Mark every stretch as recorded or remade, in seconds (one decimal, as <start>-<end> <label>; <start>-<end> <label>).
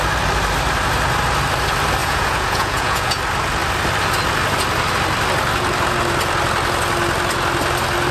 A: 0.0-2.0 recorded; 2.0-3.2 remade; 3.2-8.1 recorded